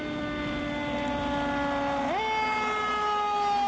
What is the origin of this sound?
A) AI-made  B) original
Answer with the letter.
B